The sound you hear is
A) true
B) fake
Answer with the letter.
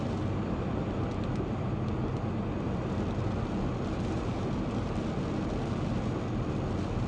A